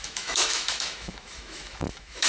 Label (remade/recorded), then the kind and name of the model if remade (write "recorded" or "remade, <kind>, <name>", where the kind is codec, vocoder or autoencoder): remade, autoencoder, DAC-VAE